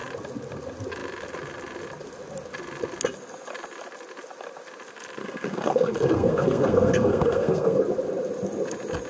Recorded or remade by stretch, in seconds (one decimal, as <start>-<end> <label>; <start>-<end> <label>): 0.0-5.2 recorded; 5.2-7.8 remade; 7.8-9.1 recorded